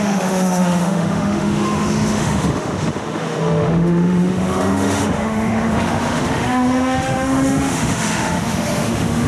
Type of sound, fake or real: fake